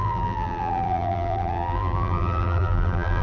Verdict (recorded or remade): remade